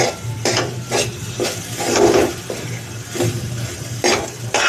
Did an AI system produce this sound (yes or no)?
yes